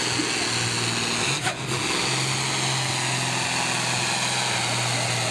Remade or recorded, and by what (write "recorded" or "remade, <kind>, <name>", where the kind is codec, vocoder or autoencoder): recorded